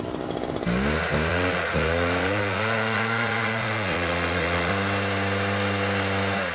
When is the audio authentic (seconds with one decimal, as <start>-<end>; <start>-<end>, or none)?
0.0-1.3; 4.7-6.5